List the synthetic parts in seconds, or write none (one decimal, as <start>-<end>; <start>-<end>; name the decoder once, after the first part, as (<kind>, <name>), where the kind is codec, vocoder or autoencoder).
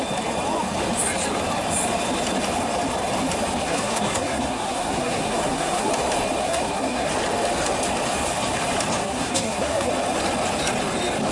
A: 3.6-5.9 (codec, SNAC); 6.4-7.1; 9.0-9.9